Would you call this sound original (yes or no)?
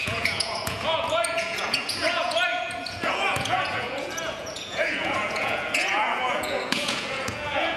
no